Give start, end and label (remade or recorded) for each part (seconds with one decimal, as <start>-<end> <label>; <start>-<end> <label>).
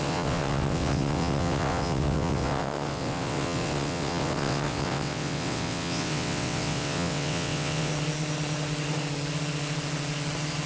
0.0-7.9 remade; 7.9-10.7 recorded